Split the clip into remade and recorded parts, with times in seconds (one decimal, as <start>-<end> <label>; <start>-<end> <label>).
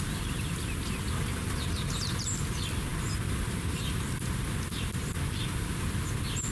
0.0-6.5 recorded